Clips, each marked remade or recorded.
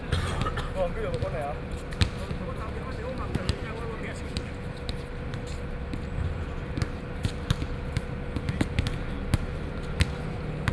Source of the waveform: recorded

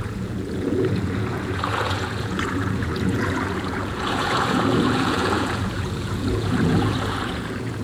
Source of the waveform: remade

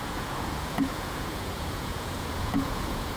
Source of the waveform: remade